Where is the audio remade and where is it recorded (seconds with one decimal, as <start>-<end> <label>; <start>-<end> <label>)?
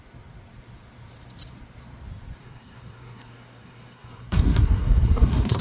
0.0-2.4 recorded; 2.4-5.6 remade